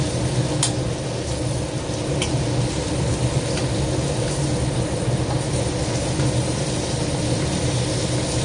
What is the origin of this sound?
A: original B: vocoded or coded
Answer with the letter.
A